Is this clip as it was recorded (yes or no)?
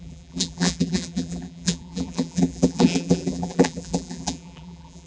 no